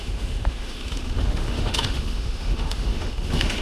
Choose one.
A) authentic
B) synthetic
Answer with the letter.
B